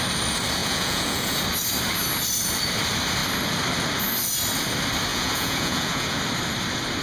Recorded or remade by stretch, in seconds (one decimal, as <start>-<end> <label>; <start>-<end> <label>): 0.0-0.6 recorded; 0.6-1.4 remade; 1.4-5.1 recorded; 5.1-6.2 remade; 6.2-7.0 recorded